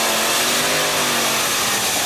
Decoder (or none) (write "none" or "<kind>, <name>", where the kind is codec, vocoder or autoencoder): none